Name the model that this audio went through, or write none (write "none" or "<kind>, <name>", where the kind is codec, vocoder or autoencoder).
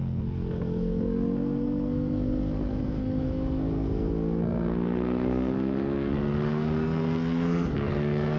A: codec, SNAC